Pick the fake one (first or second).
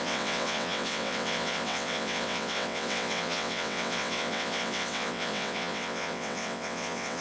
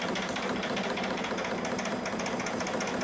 first